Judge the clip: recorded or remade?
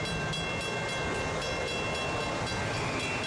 recorded